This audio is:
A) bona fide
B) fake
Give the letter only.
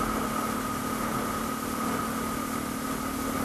A